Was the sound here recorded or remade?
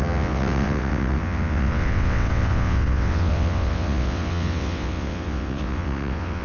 remade